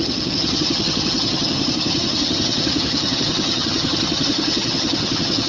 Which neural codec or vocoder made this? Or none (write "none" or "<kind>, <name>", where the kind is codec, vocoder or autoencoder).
vocoder, HiFi-GAN